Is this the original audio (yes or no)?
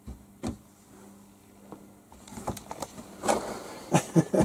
yes